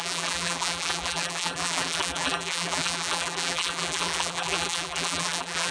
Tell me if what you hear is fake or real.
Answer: fake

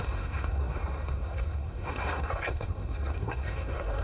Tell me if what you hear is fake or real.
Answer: fake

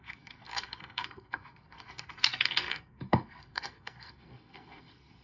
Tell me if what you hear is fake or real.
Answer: fake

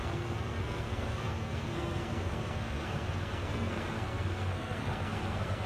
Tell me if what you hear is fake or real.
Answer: fake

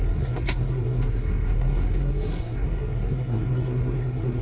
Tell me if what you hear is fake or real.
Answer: fake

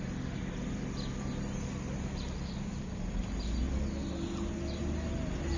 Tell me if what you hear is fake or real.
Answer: real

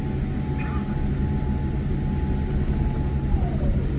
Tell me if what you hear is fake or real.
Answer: real